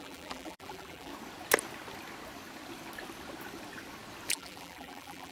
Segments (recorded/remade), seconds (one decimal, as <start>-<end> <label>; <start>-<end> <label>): 0.0-1.1 remade; 1.1-4.3 recorded; 4.3-5.3 remade